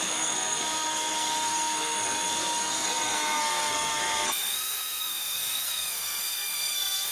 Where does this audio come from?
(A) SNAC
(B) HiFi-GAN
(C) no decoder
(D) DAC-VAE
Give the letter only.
A